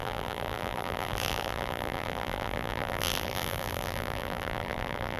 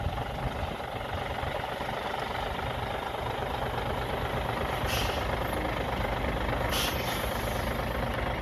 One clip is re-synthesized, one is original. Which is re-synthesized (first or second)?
first